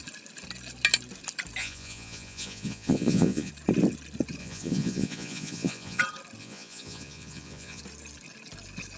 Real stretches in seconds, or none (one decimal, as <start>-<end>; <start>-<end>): 0.0-1.6; 3.5-4.4; 6.0-6.4; 7.8-9.0